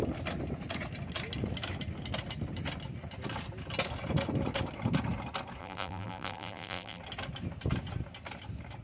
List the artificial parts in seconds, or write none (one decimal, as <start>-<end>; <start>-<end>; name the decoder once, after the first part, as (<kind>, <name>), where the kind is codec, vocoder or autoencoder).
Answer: 5.6-7.0 (vocoder, BigVGAN v2)

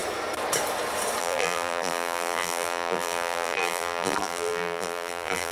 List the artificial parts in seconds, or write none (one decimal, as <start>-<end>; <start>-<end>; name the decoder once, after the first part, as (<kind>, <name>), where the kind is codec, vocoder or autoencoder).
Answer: 1.2-5.5 (vocoder, BigVGAN v2)